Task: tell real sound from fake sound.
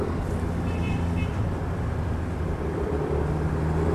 fake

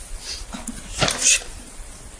fake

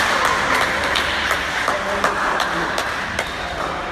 fake